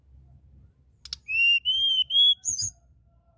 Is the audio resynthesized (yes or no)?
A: no